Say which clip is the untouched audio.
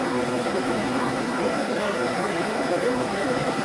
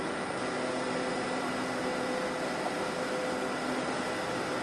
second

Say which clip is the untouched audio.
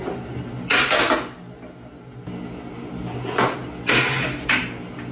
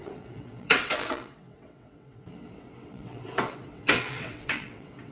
first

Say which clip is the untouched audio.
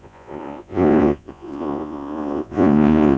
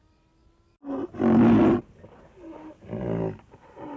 second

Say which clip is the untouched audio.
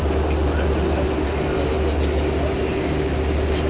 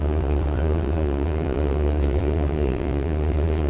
first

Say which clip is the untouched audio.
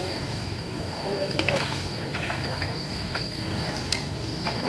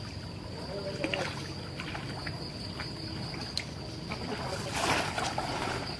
second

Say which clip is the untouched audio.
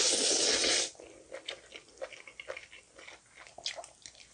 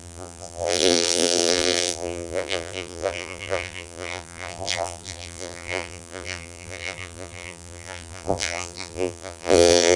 first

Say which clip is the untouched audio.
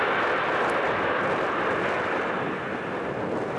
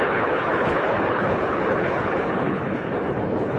first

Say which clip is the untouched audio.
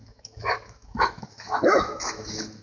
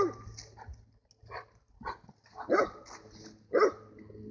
second